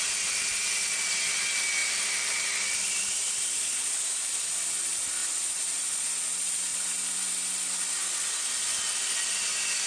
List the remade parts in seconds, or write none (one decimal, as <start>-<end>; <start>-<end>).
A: 1.8-2.5